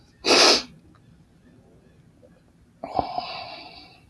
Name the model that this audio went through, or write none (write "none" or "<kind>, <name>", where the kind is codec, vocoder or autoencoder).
none